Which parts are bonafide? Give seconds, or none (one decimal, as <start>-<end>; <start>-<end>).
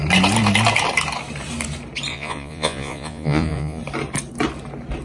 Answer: 0.0-2.1; 3.8-5.0